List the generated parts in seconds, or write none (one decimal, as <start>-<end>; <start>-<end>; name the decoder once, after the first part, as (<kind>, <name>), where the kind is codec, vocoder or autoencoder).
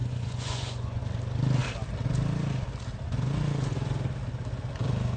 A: 0.0-1.0 (vocoder, Vocos)